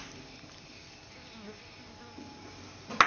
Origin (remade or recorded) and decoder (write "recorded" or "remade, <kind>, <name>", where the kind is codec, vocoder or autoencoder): recorded